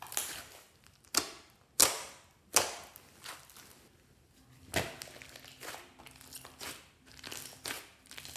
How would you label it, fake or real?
real